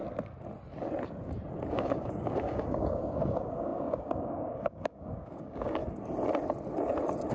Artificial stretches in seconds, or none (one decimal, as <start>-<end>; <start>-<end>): 1.7-5.8